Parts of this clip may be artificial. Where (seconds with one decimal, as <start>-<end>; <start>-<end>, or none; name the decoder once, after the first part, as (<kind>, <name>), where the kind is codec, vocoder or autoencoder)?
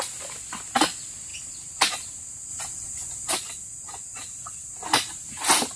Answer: 2.5-3.3 (vocoder, BigVGAN v2); 4.1-5.3